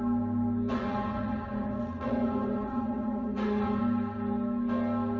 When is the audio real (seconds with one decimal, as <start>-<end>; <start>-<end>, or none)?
0.0-0.7; 3.8-5.2